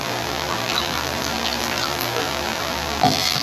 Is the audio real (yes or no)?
no